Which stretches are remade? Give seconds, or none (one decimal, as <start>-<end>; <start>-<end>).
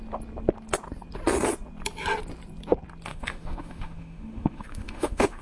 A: 3.1-5.4